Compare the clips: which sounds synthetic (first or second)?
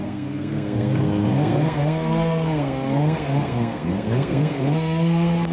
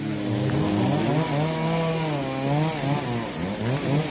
first